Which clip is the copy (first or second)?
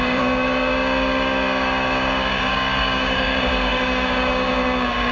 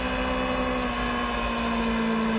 first